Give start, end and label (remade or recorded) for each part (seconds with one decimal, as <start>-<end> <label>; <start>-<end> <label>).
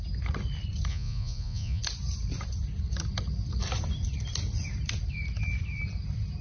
0.0-0.9 recorded; 0.9-1.8 remade; 1.8-6.4 recorded